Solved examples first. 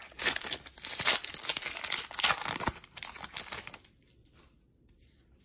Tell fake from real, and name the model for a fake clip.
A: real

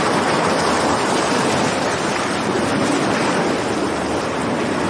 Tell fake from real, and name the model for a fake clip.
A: real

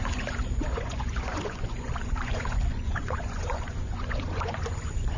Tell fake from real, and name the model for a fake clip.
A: fake, vocoder, Vocos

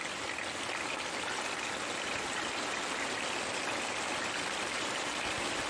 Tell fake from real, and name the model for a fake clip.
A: real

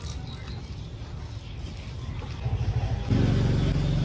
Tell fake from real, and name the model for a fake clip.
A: real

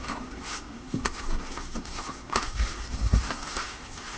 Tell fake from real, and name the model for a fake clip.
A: fake, codec, SNAC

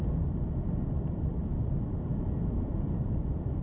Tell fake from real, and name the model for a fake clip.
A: real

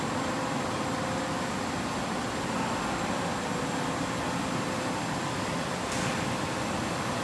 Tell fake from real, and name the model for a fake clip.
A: real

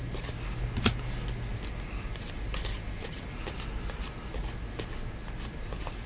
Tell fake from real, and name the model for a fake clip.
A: real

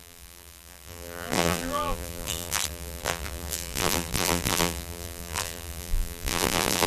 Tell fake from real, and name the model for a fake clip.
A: fake, vocoder, BigVGAN v2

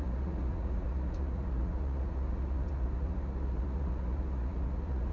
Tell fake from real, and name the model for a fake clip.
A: fake, vocoder, Vocos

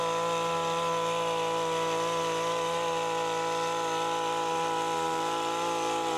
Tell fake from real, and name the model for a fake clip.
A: real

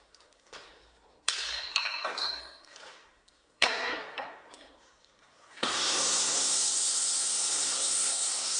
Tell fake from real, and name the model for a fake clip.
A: fake, codec, SNAC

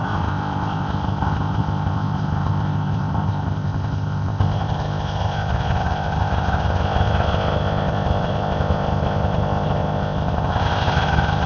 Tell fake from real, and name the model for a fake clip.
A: fake, codec, ZipCodec